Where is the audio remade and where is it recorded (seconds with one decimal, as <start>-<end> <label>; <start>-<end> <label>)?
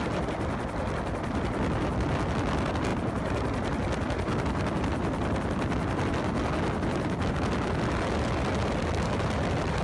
0.0-9.8 recorded